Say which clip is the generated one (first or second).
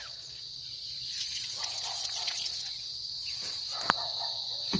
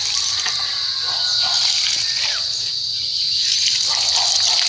first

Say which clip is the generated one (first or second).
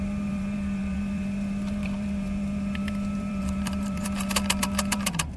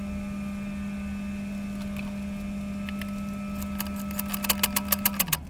first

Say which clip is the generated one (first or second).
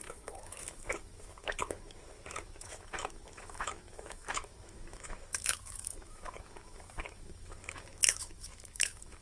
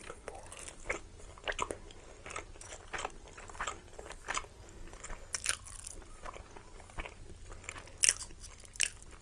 first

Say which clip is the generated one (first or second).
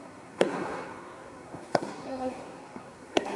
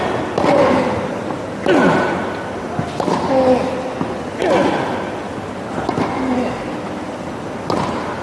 first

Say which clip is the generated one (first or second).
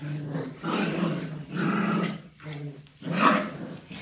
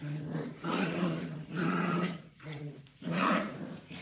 second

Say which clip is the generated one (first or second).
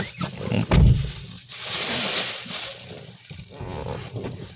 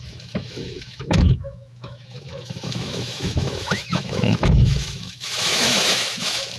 second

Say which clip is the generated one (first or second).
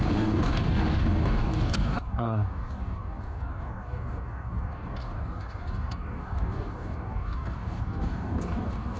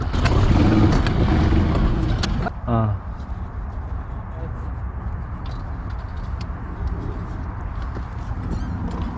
first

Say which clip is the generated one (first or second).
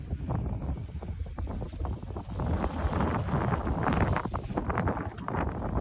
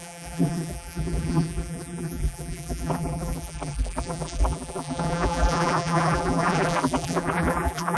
second